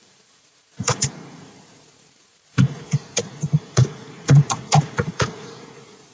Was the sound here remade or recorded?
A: remade